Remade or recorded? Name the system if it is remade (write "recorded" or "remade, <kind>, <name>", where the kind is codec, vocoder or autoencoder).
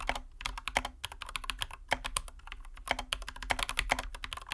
recorded